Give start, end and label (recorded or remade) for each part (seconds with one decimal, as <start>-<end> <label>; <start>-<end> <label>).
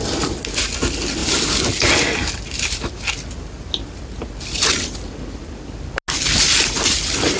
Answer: 0.0-7.4 recorded